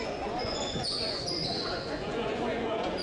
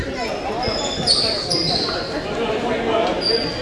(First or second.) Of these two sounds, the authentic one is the second